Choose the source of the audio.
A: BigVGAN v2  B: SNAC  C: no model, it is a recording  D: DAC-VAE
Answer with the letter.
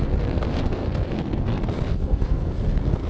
B